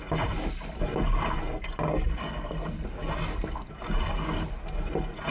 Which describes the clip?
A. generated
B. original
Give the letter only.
B